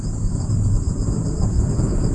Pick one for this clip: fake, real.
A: fake